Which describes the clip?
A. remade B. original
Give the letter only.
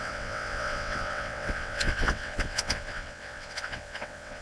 A